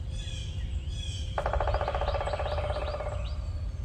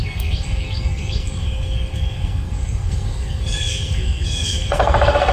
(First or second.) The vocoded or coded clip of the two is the second